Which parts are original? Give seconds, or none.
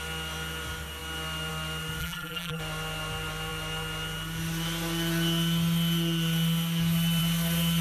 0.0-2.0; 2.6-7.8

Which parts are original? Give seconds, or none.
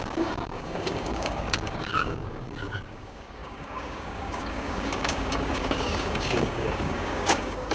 none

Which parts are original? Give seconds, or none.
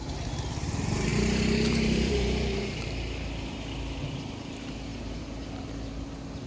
0.0-1.1; 2.9-6.5